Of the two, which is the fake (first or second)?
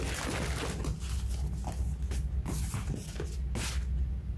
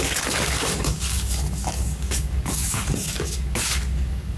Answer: second